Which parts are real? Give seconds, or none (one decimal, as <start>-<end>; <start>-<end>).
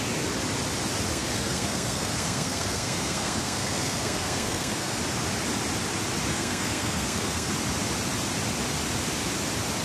0.0-1.1; 5.0-6.3; 7.5-9.8